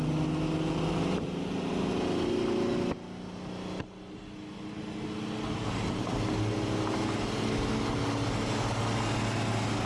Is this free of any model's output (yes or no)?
yes